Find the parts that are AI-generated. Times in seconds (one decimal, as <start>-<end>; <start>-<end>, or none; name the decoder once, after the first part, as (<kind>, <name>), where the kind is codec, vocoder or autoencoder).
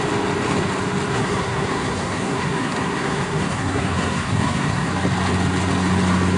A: 1.1-4.9 (codec, SNAC)